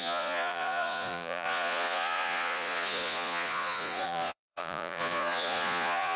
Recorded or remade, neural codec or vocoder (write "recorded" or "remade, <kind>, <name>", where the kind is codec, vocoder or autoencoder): remade, vocoder, Vocos